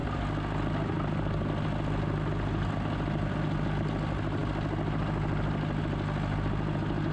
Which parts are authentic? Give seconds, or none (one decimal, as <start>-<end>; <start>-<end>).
0.0-7.1